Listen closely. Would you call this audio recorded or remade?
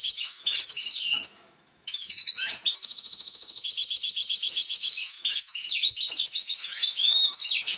remade